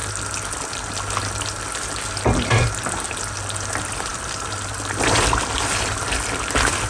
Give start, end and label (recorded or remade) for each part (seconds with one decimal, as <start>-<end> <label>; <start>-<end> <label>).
0.0-6.9 recorded